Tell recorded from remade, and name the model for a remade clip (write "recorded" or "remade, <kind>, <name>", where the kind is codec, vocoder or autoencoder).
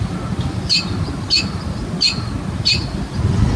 recorded